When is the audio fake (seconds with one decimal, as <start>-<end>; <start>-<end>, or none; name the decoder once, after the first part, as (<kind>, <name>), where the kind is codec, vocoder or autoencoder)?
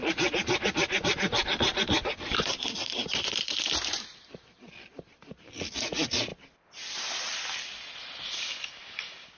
none